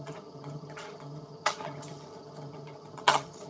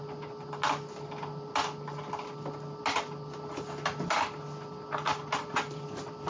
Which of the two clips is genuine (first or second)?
second